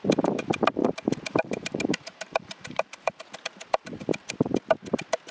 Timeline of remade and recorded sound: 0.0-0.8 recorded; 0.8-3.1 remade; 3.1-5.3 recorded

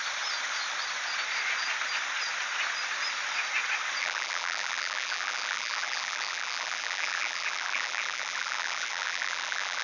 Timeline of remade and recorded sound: 0.0-4.0 recorded; 4.0-9.8 remade

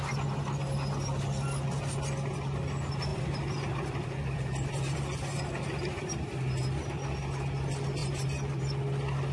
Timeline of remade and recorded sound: 0.0-3.1 recorded; 3.1-6.1 remade; 6.1-9.3 recorded